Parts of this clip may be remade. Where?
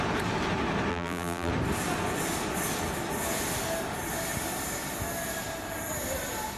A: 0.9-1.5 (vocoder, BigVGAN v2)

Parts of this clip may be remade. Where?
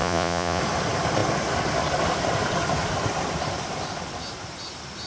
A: 0.0-0.6 (vocoder, Vocos)